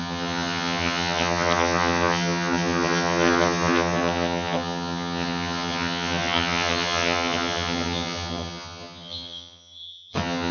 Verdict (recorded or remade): remade